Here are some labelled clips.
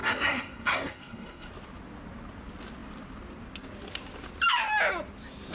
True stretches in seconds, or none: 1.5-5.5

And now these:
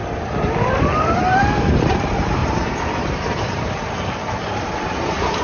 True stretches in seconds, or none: none

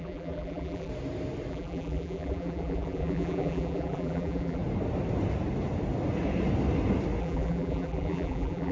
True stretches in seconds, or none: 0.9-1.5; 4.6-7.2

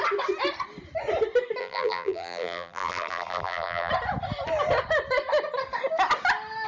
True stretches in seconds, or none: 0.0-1.6; 3.9-6.7

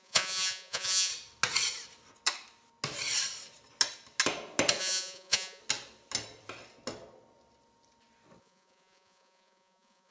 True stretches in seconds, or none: 1.1-4.8; 5.6-8.4

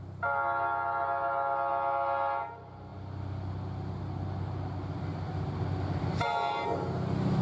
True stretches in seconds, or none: 0.0-7.4